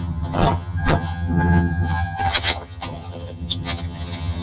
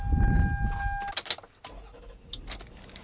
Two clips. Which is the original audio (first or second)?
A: second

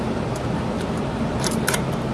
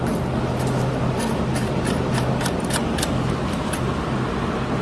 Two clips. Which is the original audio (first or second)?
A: second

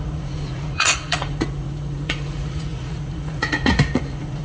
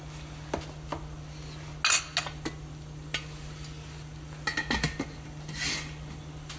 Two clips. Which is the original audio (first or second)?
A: second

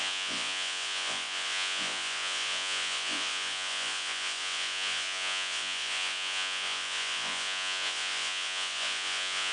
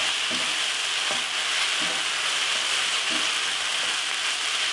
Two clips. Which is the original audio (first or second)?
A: second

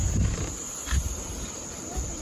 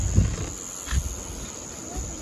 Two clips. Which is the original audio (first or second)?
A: second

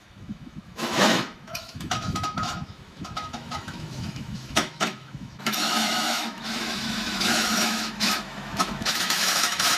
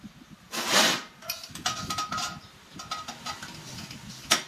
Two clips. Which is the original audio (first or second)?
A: second